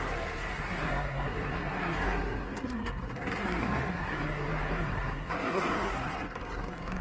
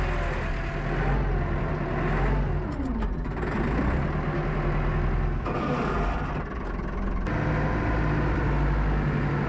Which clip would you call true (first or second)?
second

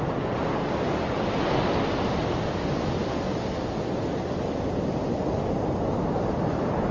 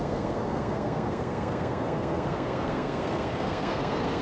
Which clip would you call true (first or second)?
first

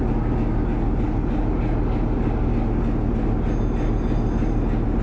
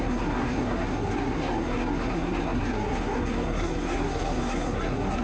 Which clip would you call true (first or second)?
first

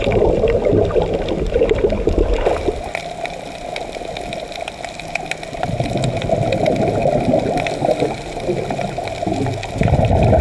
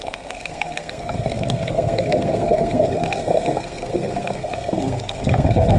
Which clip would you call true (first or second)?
first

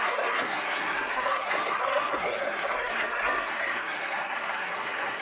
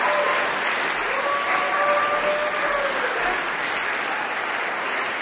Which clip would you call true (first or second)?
second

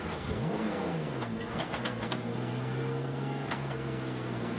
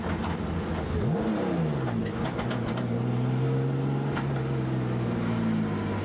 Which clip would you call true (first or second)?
second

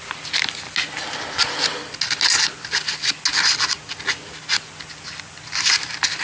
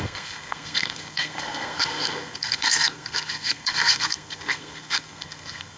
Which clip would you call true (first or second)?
first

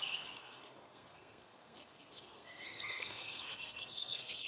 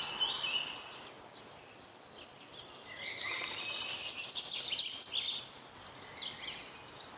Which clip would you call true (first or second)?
second